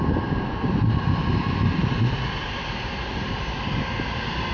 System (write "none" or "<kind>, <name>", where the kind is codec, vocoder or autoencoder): none